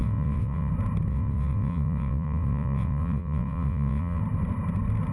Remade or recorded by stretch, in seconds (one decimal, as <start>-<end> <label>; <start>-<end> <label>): 0.0-0.7 remade; 0.7-1.1 recorded; 1.1-4.2 remade; 4.2-5.1 recorded